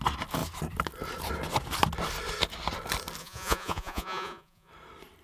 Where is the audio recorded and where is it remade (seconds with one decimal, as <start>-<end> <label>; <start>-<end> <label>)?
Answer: 0.0-3.2 recorded; 3.2-4.7 remade; 4.7-5.2 recorded